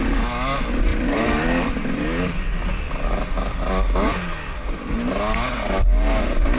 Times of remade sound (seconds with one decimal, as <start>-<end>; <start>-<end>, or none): 0.9-1.7